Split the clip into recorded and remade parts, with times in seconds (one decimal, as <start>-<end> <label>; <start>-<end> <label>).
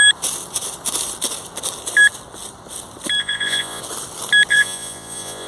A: 0.0-3.2 recorded; 3.2-3.8 remade; 3.8-4.5 recorded; 4.5-5.5 remade